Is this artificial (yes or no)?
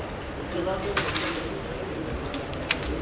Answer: no